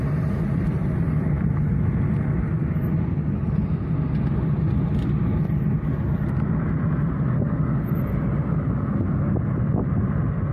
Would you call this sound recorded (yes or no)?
yes